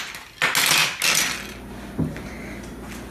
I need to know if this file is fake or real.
real